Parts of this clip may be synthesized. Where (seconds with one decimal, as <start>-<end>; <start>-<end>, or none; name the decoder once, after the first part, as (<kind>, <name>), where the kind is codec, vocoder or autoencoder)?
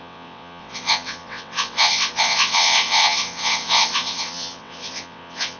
0.0-5.6 (vocoder, WaveNeXt)